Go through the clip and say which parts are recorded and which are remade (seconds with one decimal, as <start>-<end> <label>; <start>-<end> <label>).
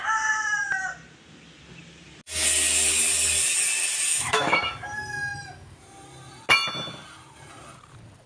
0.0-4.1 recorded; 4.1-4.7 remade; 4.7-8.3 recorded